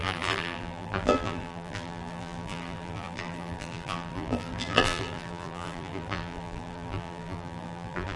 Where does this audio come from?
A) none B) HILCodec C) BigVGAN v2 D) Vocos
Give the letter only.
C